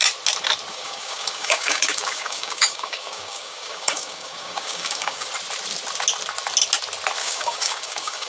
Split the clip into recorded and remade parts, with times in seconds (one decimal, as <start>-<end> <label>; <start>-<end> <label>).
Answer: 0.0-0.7 recorded; 0.7-5.3 remade; 5.3-7.2 recorded; 7.2-8.3 remade